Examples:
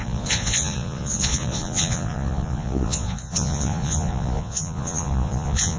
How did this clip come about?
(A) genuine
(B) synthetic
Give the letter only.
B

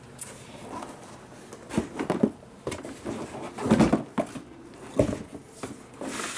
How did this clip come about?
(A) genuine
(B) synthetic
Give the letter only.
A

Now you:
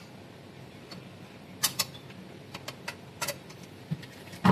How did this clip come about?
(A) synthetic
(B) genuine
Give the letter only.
B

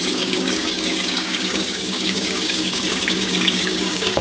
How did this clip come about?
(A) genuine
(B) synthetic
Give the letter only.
B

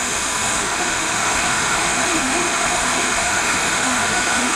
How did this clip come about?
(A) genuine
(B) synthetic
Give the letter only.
B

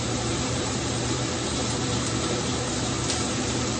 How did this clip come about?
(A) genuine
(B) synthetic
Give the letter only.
B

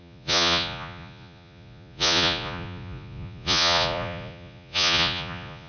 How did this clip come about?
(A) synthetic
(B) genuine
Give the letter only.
A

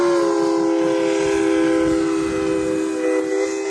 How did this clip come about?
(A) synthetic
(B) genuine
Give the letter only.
B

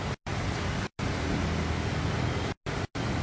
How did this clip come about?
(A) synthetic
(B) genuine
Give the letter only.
B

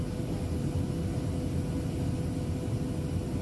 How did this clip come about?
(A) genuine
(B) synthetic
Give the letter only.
A